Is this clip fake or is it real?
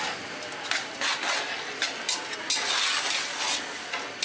real